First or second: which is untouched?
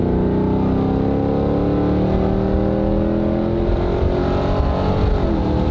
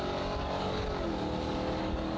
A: first